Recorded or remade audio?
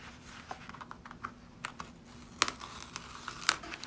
recorded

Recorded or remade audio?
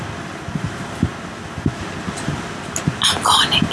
recorded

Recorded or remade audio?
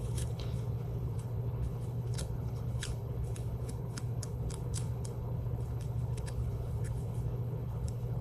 remade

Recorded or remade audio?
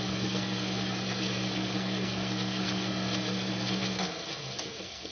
remade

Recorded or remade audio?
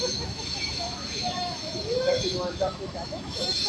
remade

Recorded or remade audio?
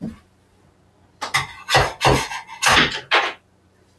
recorded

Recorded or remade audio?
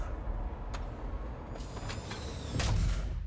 recorded